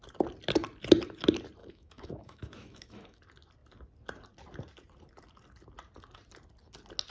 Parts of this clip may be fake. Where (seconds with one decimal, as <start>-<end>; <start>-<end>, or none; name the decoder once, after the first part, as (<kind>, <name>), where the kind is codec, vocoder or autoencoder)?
1.6-3.2 (autoencoder, DAC-VAE)